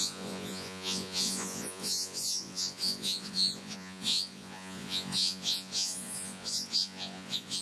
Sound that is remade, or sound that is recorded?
remade